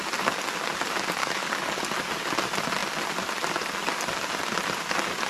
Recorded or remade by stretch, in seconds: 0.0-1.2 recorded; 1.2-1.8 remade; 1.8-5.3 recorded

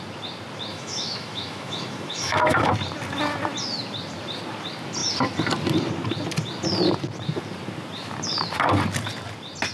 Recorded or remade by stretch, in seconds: 0.0-0.7 recorded; 0.7-2.7 remade; 2.7-9.7 recorded

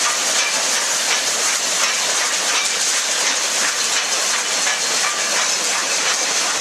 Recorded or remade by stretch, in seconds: 0.0-2.9 recorded; 2.9-3.4 remade; 3.4-6.6 recorded

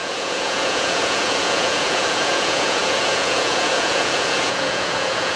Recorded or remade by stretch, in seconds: 0.0-5.4 remade

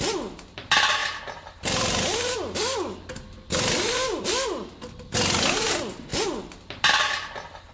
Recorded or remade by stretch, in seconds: 0.0-7.7 recorded

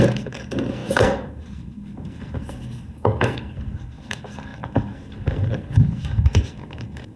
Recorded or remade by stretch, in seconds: 0.0-7.2 remade